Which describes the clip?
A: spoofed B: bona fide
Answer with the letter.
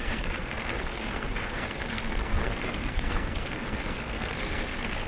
A